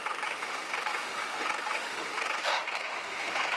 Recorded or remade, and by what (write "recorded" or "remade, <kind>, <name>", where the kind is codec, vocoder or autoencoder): remade, autoencoder, DAC-VAE